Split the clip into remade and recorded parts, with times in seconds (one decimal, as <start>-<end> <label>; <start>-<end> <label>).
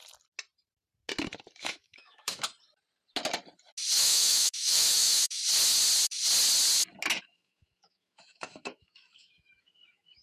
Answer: 0.0-1.6 recorded; 1.6-2.5 remade; 2.5-4.0 recorded; 4.0-5.4 remade; 5.4-7.2 recorded; 7.2-10.2 remade